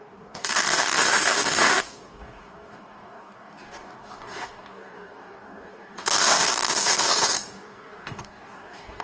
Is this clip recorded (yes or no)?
no